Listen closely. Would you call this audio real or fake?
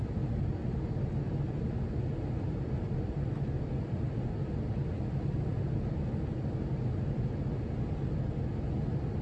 real